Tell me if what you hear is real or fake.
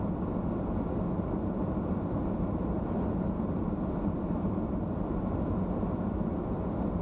real